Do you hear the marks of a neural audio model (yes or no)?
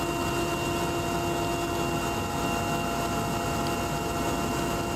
no